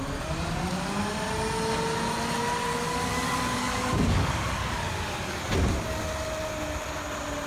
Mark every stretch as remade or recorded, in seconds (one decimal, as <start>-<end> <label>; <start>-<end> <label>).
0.0-2.7 recorded; 2.7-5.4 remade; 5.4-7.5 recorded